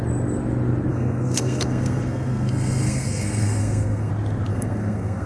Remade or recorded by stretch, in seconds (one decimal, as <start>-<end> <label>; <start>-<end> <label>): 0.0-0.9 recorded; 0.9-4.1 remade; 4.1-4.5 recorded; 4.5-5.3 remade